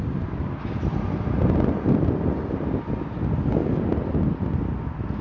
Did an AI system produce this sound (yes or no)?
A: no